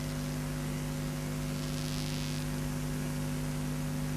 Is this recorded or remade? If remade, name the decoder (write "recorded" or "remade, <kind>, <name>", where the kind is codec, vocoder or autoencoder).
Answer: recorded